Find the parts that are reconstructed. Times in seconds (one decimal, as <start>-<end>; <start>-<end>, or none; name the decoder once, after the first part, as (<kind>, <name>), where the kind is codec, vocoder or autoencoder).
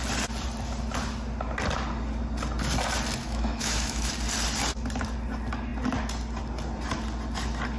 3.2-4.1 (autoencoder, DAC-VAE)